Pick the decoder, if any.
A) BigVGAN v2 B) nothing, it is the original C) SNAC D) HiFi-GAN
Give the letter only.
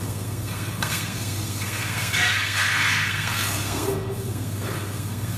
C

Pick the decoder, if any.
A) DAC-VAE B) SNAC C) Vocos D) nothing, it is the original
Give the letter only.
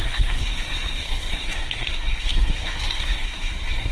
B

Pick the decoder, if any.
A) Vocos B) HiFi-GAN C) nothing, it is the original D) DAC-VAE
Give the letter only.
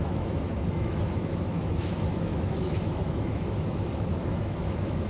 D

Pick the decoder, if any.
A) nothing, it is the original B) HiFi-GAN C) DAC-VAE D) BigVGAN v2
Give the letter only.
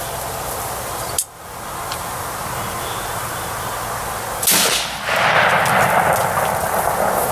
A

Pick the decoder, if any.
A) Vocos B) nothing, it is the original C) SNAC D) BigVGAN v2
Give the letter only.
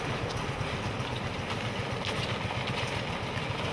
B